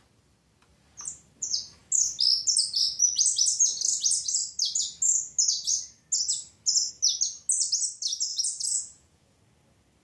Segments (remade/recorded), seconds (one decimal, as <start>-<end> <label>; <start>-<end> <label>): 0.0-8.3 recorded; 8.3-9.4 remade; 9.4-10.0 recorded